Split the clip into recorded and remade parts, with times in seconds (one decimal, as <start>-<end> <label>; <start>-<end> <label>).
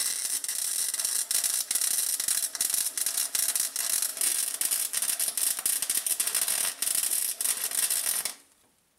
0.0-0.9 remade; 0.9-9.0 recorded